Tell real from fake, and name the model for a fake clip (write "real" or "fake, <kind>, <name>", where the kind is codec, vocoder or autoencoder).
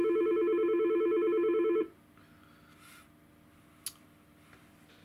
real